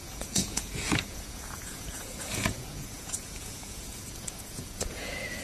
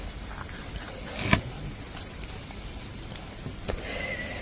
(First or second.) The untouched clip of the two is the second